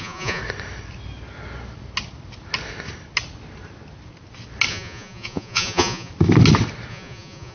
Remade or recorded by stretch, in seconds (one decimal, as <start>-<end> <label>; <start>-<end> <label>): 0.0-0.4 remade; 0.4-4.7 recorded; 4.7-6.1 remade; 6.1-6.9 recorded; 6.9-7.5 remade